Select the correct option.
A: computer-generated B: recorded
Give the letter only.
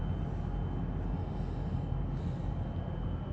B